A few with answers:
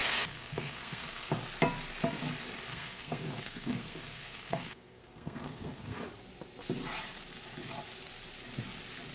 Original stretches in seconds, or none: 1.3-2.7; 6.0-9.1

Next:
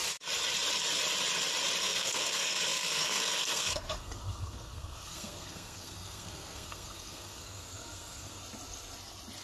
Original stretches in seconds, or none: 0.0-1.8; 8.4-9.4

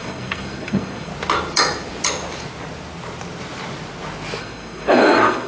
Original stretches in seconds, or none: 1.1-4.4

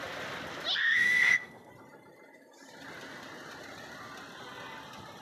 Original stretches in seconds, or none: 0.0-0.8; 1.7-5.2

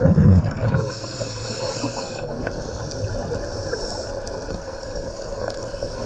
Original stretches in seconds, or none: 2.8-4.5

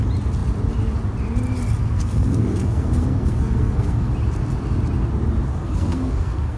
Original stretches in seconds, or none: 0.0-1.8; 4.1-5.5

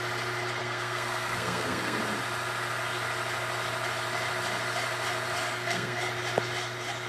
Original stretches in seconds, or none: 0.0-0.6; 2.0-5.4; 6.1-7.1

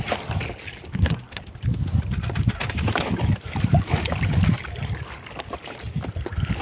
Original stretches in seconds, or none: 0.0-0.9; 1.4-6.6